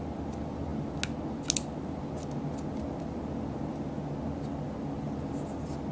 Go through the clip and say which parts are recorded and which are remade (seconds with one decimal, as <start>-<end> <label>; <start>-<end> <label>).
0.0-5.9 recorded